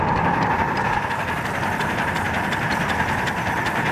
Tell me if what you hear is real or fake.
real